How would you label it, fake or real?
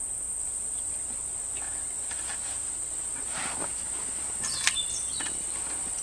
real